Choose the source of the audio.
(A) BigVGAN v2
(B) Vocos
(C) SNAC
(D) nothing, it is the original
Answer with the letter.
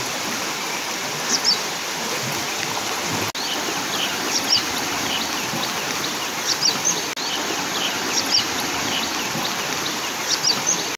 D